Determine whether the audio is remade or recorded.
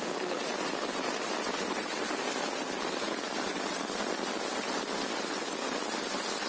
recorded